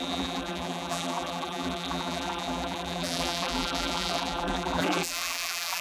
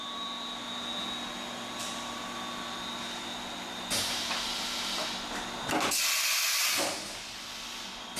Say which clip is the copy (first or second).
first